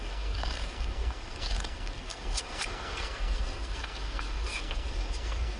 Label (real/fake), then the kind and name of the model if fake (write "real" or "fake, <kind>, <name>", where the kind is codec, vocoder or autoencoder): fake, codec, SNAC